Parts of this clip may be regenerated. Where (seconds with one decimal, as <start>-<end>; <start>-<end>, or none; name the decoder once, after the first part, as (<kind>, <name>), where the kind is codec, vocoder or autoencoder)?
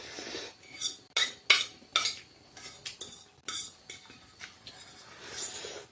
none